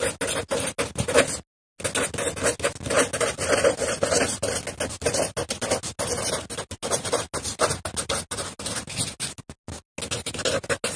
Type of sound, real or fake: real